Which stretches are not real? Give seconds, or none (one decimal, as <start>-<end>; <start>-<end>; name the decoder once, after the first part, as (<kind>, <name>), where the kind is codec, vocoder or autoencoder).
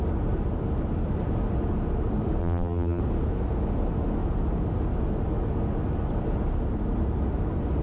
2.4-3.0 (vocoder, BigVGAN v2)